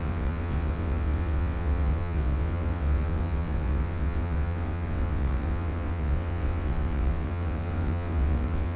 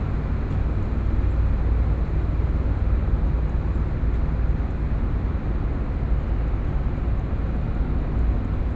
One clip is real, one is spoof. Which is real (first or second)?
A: second